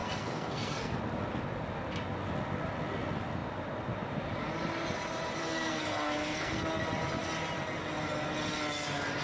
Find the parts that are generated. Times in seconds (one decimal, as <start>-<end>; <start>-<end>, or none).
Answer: 0.0-1.0; 5.4-6.6